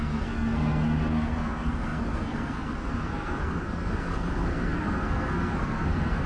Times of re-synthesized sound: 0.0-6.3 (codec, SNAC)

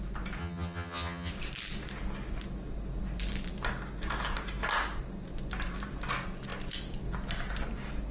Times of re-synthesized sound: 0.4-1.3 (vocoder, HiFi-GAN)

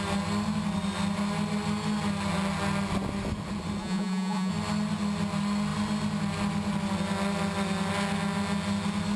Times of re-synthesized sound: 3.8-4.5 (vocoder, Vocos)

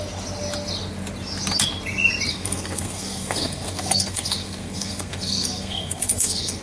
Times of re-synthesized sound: 2.3-6.6 (codec, SNAC)